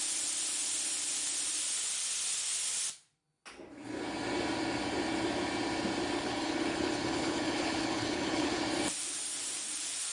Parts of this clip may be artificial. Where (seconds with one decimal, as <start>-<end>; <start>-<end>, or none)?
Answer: 6.2-8.6